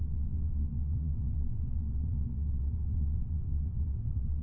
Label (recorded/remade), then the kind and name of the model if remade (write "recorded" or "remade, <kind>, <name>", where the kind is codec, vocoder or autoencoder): remade, vocoder, WaveNeXt